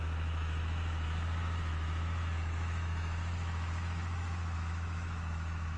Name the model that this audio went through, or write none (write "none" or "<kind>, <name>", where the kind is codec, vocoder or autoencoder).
autoencoder, DAC-VAE